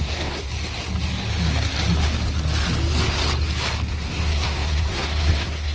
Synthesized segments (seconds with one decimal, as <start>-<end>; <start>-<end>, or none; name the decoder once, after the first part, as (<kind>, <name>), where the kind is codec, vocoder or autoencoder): 0.0-0.5 (codec, SNAC); 3.9-5.7